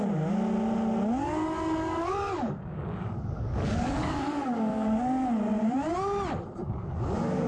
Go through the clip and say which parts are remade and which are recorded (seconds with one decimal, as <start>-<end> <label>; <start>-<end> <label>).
0.0-1.2 recorded; 1.2-5.0 remade; 5.0-6.6 recorded; 6.6-7.5 remade